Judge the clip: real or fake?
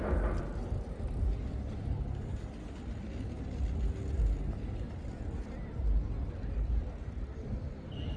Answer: real